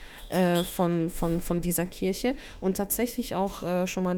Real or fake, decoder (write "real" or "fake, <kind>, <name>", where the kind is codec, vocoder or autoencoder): fake, autoencoder, DAC-VAE